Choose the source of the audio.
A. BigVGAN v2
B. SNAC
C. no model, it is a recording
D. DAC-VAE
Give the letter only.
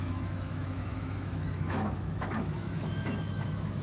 D